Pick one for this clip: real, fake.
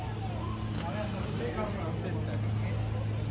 real